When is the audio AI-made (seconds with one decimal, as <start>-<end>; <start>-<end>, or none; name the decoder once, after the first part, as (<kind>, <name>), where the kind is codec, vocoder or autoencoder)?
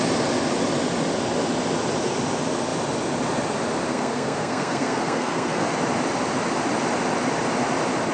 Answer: 3.9-5.7 (codec, SNAC)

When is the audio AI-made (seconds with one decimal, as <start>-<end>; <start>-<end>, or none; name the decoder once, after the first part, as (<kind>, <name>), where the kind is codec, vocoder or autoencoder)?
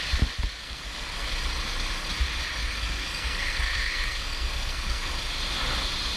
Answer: 0.6-1.3 (codec, SNAC); 2.6-5.1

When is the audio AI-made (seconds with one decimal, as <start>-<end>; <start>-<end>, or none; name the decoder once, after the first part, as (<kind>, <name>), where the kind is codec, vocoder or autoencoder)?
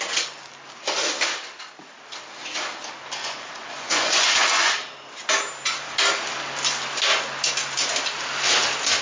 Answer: 3.2-4.7 (vocoder, Vocos)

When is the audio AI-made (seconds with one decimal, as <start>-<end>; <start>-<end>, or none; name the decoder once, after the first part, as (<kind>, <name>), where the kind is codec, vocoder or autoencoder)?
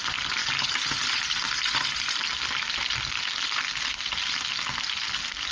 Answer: none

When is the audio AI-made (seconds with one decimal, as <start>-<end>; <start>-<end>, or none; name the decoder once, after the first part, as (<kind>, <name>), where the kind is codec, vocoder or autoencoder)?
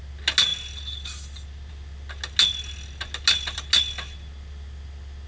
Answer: none